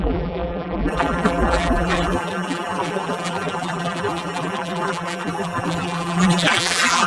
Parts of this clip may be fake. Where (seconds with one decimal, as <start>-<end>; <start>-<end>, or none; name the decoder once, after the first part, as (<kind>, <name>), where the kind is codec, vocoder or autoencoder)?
0.0-7.1 (vocoder, BigVGAN v2)